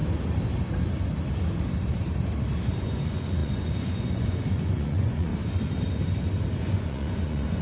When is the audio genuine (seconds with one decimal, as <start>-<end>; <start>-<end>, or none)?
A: 0.0-2.8; 5.3-6.5